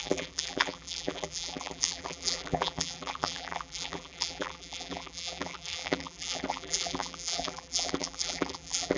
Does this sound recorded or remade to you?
remade